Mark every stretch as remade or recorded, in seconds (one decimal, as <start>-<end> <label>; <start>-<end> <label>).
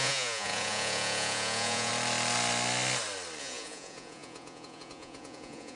0.0-1.9 remade; 1.9-3.4 recorded; 3.4-5.8 remade